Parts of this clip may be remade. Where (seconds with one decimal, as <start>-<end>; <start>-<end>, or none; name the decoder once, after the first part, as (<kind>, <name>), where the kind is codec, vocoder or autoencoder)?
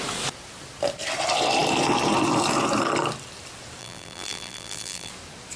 3.8-5.1 (vocoder, BigVGAN v2)